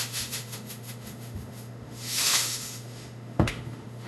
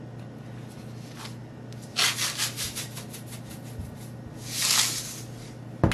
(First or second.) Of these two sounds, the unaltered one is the second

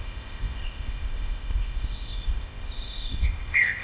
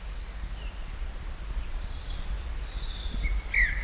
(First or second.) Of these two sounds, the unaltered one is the second